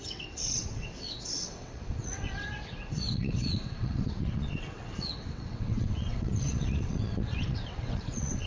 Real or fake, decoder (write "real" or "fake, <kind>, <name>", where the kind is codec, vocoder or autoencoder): fake, vocoder, WaveNeXt